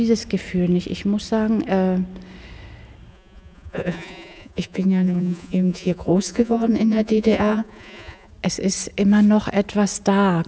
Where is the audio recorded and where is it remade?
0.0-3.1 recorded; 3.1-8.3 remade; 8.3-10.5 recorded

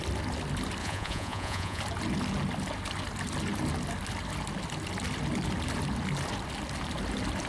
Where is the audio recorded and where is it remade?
0.0-0.8 recorded; 0.8-1.8 remade; 1.8-7.5 recorded

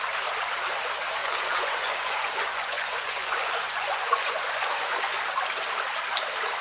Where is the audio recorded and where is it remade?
0.0-1.2 recorded; 1.2-5.2 remade; 5.2-6.6 recorded

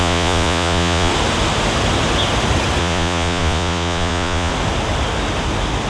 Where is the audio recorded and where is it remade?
0.0-1.1 remade; 1.1-2.8 recorded; 2.8-4.5 remade; 4.5-5.9 recorded

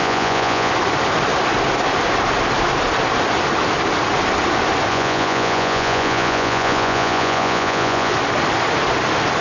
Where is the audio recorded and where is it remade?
0.0-0.7 remade; 0.7-4.9 recorded; 4.9-8.1 remade; 8.1-9.4 recorded

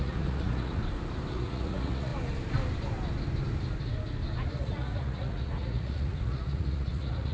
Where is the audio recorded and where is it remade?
0.0-0.8 remade; 0.8-1.3 recorded; 1.3-2.1 remade; 2.1-4.5 recorded; 4.5-7.3 remade